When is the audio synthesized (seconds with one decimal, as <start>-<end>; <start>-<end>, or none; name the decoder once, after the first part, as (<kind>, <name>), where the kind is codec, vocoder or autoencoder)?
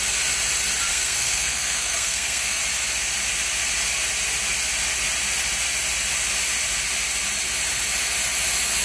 0.9-2.6 (codec, SNAC)